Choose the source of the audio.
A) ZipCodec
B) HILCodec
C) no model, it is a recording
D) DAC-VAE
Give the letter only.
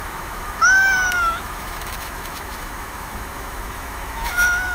D